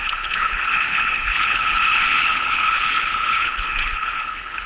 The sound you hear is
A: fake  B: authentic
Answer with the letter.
A